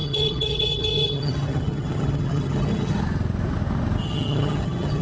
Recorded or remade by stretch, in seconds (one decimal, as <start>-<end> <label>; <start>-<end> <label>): 0.0-3.0 remade; 3.0-4.0 recorded; 4.0-5.0 remade